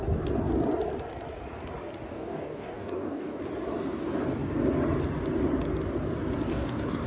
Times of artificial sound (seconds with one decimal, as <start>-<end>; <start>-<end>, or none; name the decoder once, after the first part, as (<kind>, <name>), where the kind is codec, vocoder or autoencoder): 2.1-3.4 (codec, DAC); 6.5-7.1